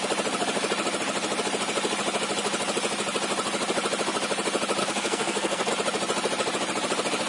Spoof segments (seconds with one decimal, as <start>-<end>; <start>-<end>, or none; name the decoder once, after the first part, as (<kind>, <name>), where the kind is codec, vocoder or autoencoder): 4.8-5.7 (codec, SNAC)